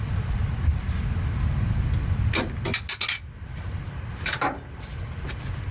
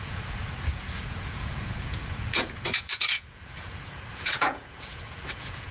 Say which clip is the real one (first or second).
first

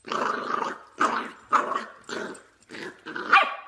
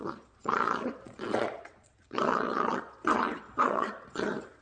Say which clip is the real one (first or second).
first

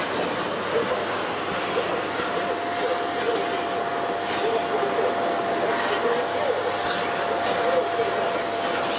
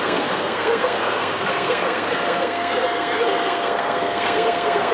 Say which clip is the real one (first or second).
first